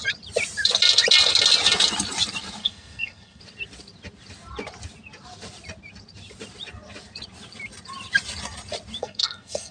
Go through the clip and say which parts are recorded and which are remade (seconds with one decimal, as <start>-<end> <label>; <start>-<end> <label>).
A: 0.0-2.6 recorded; 2.6-3.4 remade; 3.4-9.0 recorded; 9.0-9.7 remade